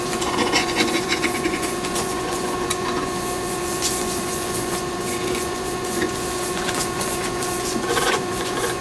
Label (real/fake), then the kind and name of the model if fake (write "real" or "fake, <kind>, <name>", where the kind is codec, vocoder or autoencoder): fake, vocoder, Vocos